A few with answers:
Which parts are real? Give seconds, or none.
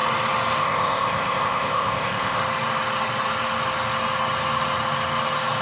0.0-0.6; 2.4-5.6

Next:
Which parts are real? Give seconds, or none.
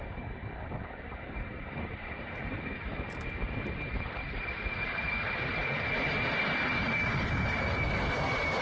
none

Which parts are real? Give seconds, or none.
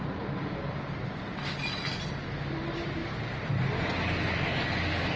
0.0-5.2